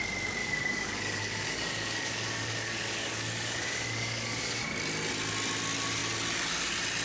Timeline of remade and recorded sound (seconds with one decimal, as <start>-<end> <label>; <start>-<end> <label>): 0.0-0.4 recorded; 0.4-4.6 remade; 4.6-7.0 recorded